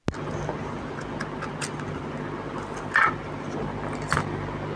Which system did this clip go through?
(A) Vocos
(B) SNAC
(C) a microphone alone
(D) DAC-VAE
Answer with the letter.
C